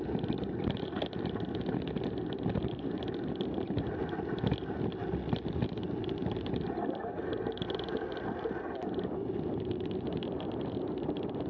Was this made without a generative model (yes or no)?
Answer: yes